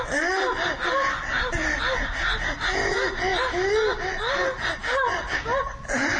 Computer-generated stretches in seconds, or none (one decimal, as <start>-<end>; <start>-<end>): none

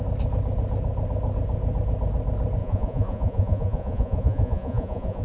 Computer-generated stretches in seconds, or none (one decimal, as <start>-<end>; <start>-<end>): 2.6-5.2

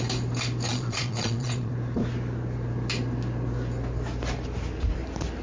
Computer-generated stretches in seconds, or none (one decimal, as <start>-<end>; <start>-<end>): 0.7-1.7

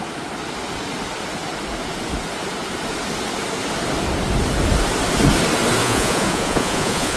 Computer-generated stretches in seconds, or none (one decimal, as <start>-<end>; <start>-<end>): 5.8-7.2

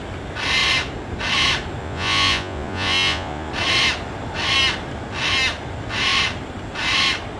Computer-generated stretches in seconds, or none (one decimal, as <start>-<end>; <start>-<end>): 1.8-3.5

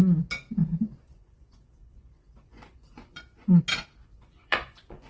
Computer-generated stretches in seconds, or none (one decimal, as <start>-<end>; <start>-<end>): 0.6-3.6; 4.0-5.1

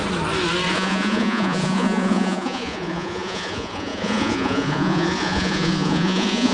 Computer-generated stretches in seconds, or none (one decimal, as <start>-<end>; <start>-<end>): 0.7-6.5

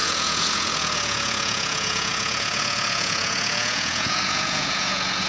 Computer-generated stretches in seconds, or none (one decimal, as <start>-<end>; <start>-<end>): 0.0-5.3